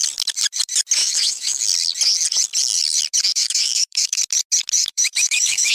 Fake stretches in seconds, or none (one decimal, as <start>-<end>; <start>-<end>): 1.0-1.6; 3.3-4.2; 4.8-5.7

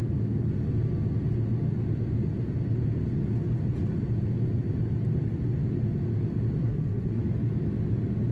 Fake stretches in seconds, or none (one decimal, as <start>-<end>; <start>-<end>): 6.6-7.2

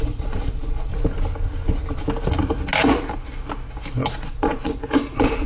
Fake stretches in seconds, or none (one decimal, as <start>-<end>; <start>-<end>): 0.0-0.9; 4.2-5.5

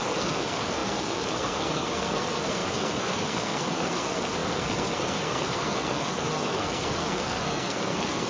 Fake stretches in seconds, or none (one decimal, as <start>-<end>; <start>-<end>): 0.0-8.3

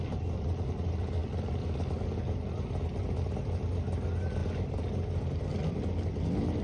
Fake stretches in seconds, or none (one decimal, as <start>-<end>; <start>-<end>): none

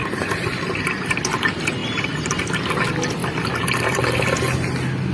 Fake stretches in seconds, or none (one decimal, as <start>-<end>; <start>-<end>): 0.0-1.1; 1.8-2.7; 3.2-4.4

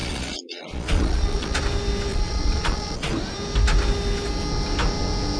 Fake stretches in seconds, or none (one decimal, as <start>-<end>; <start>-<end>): 0.0-1.6; 2.1-3.1

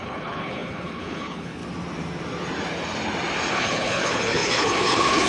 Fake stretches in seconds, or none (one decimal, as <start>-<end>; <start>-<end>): 0.0-1.6; 3.5-5.3